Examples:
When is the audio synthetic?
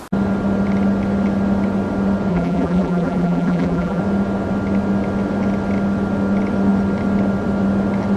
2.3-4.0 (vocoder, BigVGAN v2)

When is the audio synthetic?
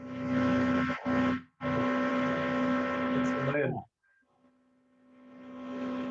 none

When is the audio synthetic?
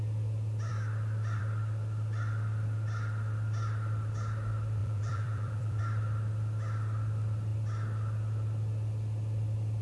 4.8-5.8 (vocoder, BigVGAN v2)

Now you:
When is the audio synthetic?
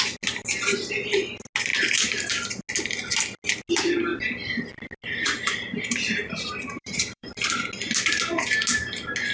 4.1-4.6 (vocoder, BigVGAN v2); 5.7-7.3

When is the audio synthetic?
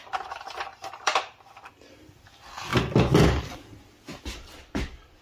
0.7-1.4 (vocoder, BigVGAN v2)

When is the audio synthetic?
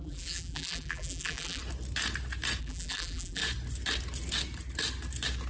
0.0-1.6 (vocoder, BigVGAN v2); 2.6-3.4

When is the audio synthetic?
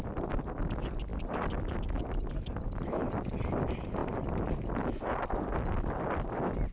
1.1-2.0 (vocoder, BigVGAN v2); 4.0-5.0